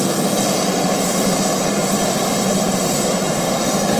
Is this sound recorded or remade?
recorded